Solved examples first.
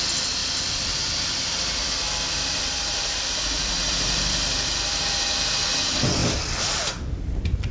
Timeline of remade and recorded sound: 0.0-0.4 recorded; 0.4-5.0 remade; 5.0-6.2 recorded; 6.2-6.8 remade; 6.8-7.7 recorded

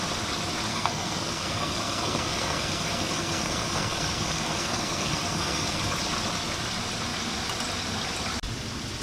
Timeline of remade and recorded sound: 0.0-0.7 recorded; 0.7-5.8 remade; 5.8-9.0 recorded

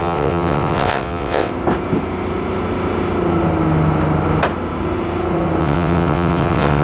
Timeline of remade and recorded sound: 0.0-1.5 remade; 1.5-5.6 recorded; 5.6-6.8 remade

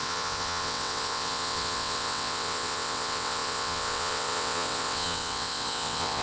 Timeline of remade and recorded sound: 0.0-6.2 remade

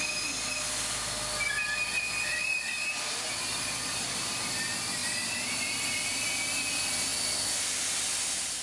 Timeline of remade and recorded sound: 0.0-2.3 recorded; 2.3-4.4 remade; 4.4-5.0 recorded; 5.0-6.4 remade; 6.4-8.6 recorded